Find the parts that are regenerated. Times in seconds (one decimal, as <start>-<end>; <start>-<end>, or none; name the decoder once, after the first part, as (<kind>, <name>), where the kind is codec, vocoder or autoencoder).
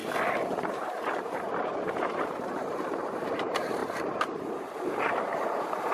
0.6-5.9 (vocoder, BigVGAN v2)